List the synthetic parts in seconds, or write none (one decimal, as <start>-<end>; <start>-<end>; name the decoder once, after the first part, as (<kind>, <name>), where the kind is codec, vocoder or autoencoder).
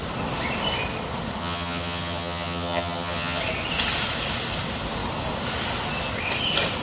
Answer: 1.4-3.4 (vocoder, HiFi-GAN)